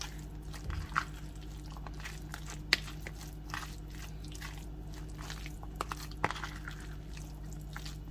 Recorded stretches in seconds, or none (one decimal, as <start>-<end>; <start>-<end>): 0.0-8.1